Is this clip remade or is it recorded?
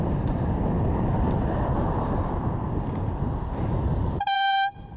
remade